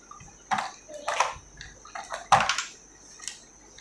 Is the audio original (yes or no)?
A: yes